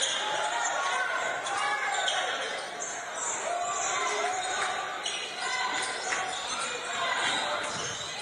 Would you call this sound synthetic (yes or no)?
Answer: no